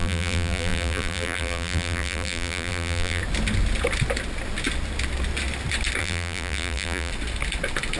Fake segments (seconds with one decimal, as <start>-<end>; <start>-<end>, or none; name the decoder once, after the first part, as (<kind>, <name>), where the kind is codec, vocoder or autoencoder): 0.0-3.2 (vocoder, BigVGAN v2); 6.0-7.1